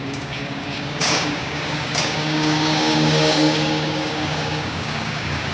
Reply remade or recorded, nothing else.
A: remade